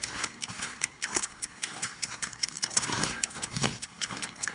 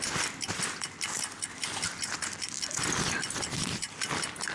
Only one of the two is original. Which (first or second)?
second